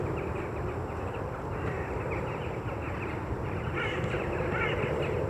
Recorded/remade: remade